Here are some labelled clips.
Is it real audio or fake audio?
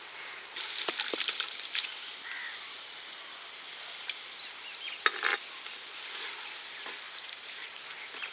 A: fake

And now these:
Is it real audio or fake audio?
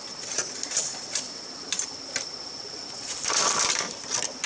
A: fake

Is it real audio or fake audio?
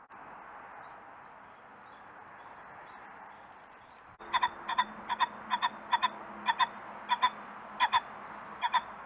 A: real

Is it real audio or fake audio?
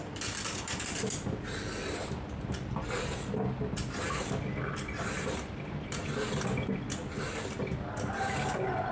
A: fake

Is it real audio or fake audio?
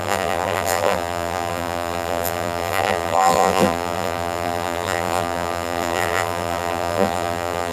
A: fake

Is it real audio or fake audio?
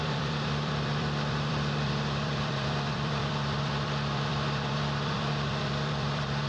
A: fake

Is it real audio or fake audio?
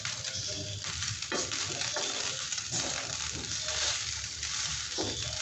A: real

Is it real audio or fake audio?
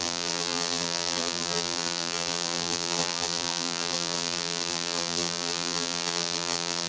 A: fake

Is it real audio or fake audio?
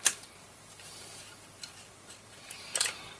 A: fake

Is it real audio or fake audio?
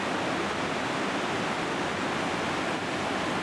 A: real